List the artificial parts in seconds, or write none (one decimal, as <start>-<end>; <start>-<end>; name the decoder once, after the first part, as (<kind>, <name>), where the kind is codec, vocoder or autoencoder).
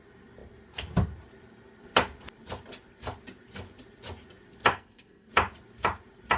4.7-5.3 (codec, SNAC)